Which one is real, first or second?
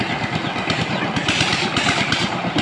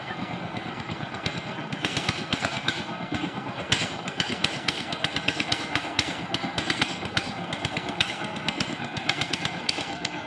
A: first